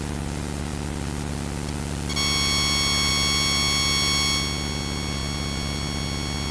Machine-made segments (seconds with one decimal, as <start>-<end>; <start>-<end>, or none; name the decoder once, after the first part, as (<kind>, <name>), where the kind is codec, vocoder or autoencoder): none